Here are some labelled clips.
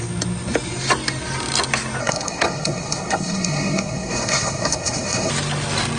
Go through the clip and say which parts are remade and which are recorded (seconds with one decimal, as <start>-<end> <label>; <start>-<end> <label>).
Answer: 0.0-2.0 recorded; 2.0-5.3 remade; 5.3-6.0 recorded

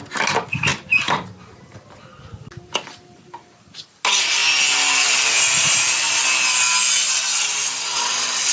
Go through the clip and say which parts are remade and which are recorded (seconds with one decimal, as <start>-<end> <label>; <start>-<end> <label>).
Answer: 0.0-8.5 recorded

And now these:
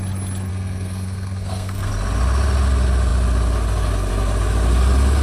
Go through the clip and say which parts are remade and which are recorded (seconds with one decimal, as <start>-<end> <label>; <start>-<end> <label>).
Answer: 0.0-0.5 recorded; 0.5-1.9 remade; 1.9-5.2 recorded